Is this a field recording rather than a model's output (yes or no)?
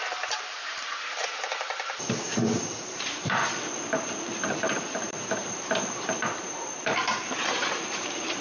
no